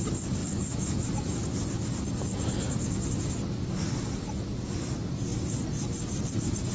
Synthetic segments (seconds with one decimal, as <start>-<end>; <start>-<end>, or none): none